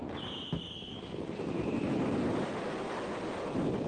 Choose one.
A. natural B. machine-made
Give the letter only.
A